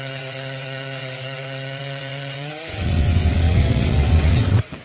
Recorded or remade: remade